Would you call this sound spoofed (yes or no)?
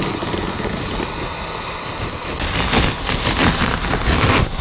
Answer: no